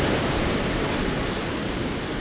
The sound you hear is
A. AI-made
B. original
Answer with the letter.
B